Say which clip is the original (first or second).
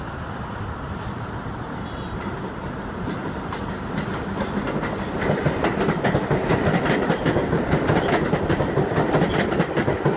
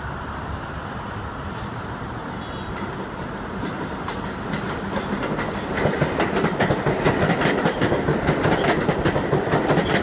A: second